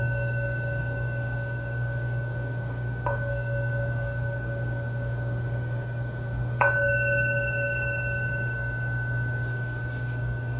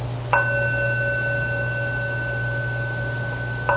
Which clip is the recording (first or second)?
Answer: second